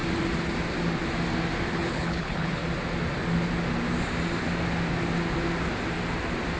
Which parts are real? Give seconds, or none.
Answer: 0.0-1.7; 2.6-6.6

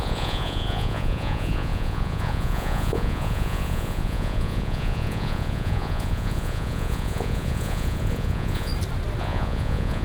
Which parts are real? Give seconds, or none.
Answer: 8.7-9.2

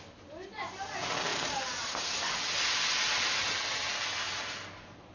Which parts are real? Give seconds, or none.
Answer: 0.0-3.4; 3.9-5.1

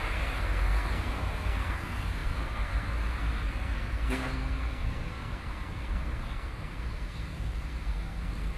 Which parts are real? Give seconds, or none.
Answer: none